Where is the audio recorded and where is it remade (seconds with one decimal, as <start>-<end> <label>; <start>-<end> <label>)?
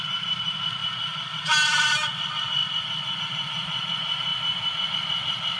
0.0-5.6 recorded